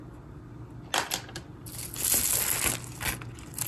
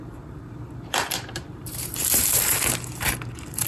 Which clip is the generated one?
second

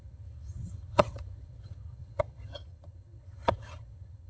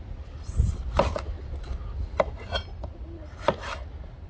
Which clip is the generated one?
first